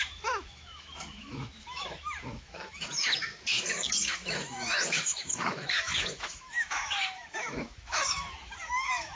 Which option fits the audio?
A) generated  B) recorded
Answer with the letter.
A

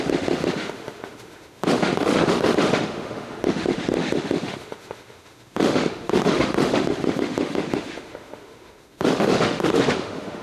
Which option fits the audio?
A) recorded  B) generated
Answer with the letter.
B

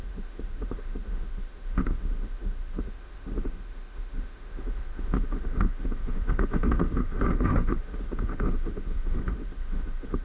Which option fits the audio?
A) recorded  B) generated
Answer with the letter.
B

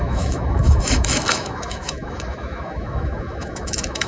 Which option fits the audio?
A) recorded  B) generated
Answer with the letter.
B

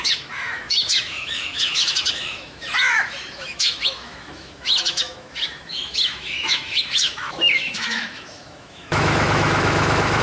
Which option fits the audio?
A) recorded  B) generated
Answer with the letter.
B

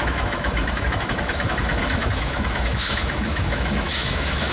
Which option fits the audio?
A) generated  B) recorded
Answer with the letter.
A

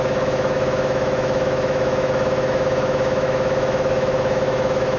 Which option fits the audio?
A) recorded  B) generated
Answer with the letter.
B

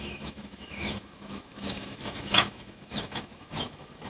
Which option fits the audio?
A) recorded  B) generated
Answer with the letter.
B